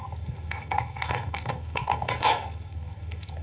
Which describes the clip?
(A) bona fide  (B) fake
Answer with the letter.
B